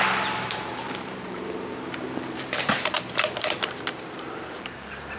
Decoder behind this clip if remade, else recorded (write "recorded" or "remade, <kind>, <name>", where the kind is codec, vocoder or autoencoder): remade, vocoder, BigVGAN v2